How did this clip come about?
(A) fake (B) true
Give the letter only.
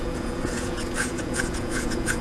A